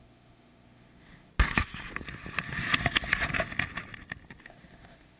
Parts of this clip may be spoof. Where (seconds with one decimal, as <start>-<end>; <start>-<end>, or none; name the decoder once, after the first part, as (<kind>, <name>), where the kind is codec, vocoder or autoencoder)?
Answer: 0.0-1.3 (autoencoder, DAC-VAE); 4.4-5.2